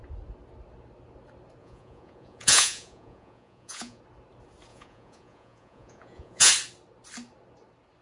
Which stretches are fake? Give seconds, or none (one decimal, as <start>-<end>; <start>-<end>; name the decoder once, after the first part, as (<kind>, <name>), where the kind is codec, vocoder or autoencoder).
1.6-4.0 (vocoder, Vocos); 4.7-6.5